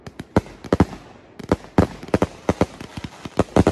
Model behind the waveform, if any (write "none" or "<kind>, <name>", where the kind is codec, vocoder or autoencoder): none